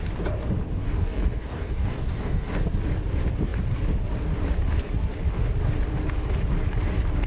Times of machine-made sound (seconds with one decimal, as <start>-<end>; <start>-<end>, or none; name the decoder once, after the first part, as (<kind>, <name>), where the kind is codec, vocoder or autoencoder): 0.8-2.5 (codec, DAC)